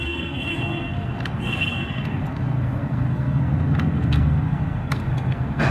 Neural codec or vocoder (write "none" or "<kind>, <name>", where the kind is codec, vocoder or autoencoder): codec, SNAC